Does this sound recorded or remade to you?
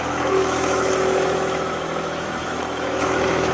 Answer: remade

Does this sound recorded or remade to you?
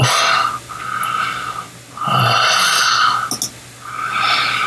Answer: recorded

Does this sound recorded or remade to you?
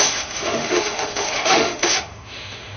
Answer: remade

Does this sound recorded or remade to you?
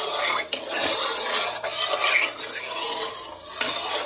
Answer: recorded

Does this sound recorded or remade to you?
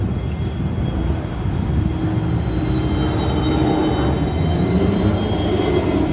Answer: recorded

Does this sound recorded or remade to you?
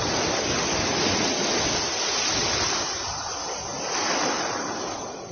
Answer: recorded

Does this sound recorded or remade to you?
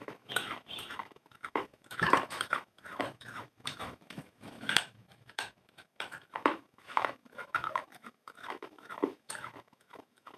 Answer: remade